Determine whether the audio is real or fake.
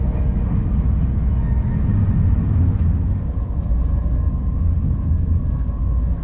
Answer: real